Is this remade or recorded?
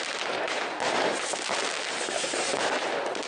recorded